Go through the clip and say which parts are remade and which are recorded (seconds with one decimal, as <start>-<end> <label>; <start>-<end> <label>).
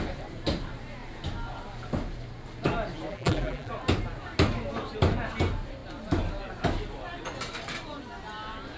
0.0-3.1 recorded; 3.1-3.7 remade; 3.7-8.8 recorded